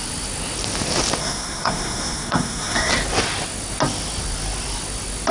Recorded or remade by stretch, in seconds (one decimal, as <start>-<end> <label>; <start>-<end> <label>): 0.0-1.2 recorded; 1.2-2.9 remade; 2.9-5.3 recorded